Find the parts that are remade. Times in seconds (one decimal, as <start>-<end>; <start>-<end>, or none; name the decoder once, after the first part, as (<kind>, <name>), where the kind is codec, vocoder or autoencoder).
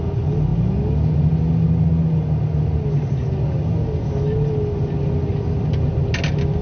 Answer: none